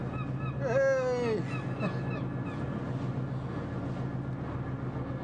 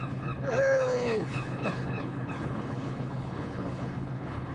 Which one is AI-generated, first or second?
second